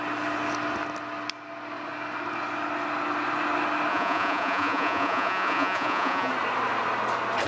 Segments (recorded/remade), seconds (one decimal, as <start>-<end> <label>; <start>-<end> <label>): 0.0-3.9 recorded; 3.9-6.3 remade; 6.3-7.5 recorded